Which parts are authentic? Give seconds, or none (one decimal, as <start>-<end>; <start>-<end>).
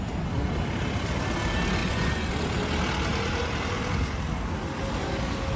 0.0-1.8; 2.3-5.6